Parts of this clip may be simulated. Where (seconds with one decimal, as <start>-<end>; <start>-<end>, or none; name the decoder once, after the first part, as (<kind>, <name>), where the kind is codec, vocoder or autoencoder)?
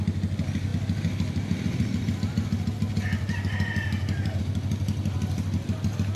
none